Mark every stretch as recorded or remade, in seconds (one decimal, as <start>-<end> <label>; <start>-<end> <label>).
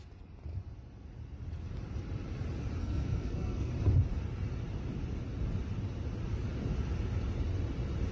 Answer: 0.0-2.8 recorded; 2.8-3.7 remade; 3.7-8.1 recorded